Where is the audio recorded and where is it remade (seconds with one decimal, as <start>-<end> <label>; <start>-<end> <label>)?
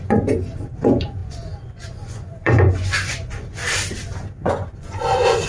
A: 0.0-3.6 remade; 3.6-4.4 recorded; 4.4-5.5 remade